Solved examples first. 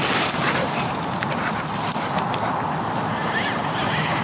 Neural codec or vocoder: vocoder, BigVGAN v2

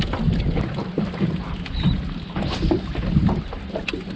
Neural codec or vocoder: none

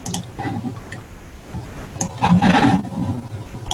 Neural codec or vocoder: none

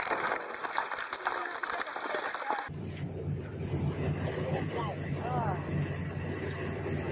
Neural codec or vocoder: vocoder, BigVGAN v2